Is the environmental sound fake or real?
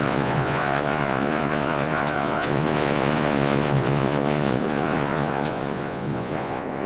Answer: fake